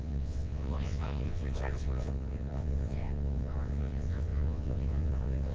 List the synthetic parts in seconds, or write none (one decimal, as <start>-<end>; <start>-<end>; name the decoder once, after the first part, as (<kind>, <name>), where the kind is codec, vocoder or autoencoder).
0.0-5.5 (vocoder, WaveNeXt)